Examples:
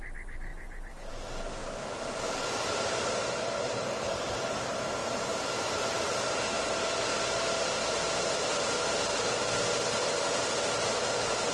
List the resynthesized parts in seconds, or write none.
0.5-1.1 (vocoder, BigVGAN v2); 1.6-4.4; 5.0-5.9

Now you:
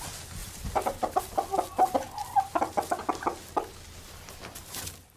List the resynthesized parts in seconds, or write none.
0.4-1.2 (vocoder, BigVGAN v2)

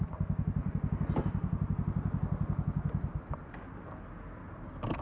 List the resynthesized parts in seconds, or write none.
0.6-1.2 (vocoder, BigVGAN v2)

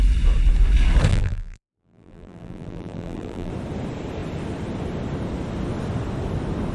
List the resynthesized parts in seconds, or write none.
1.1-3.5 (vocoder, BigVGAN v2)

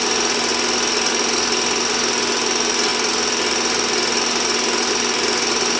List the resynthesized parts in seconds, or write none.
none

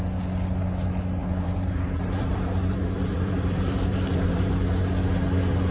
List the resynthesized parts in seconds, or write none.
1.2-4.5 (vocoder, BigVGAN v2)

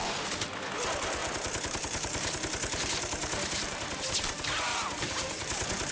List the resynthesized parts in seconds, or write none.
1.2-4.0 (vocoder, BigVGAN v2); 4.7-5.9